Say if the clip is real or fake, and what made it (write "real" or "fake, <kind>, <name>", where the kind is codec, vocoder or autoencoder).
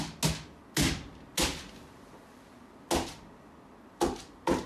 real